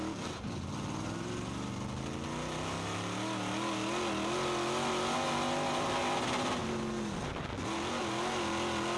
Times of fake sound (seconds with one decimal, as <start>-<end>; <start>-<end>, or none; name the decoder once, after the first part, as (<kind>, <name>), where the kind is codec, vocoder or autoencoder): none